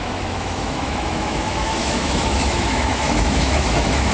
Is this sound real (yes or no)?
no